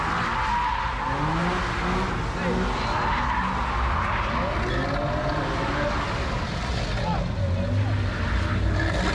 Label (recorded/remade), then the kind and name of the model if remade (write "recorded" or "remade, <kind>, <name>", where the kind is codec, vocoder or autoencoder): recorded